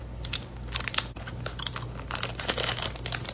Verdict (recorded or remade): recorded